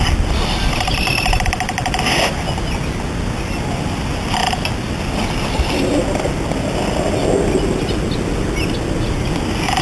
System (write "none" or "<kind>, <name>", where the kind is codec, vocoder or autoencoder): none